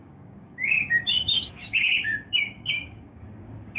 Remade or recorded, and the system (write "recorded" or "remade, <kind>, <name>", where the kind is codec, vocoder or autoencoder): remade, codec, DAC